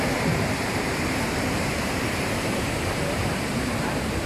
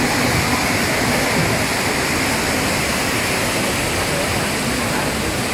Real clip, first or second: second